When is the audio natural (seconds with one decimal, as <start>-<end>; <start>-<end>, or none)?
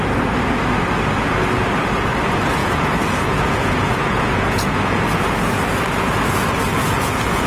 0.0-2.6; 5.4-6.7